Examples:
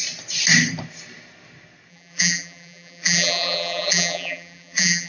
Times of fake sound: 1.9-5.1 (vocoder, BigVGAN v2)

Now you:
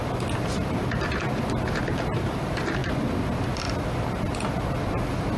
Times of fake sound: none

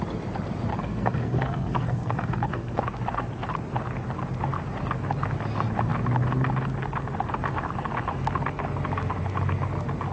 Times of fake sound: 0.7-2.8 (codec, SNAC)

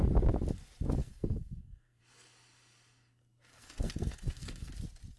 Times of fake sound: 1.0-2.0 (codec, SNAC); 3.5-4.7

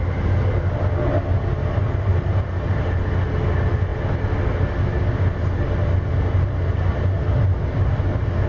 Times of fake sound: none

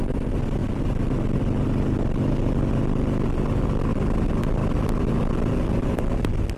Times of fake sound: none

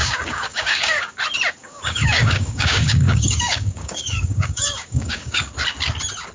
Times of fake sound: 0.0-1.1 (codec, DAC); 1.6-5.4

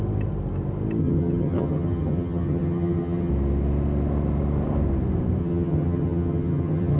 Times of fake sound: 1.0-3.3 (vocoder, HiFi-GAN); 5.4-7.0